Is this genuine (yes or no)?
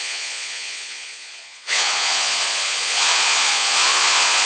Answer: no